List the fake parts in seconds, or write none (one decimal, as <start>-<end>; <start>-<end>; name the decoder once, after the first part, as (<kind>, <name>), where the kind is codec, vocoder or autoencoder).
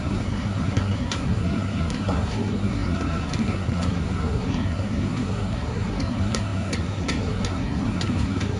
0.0-8.6 (codec, SNAC)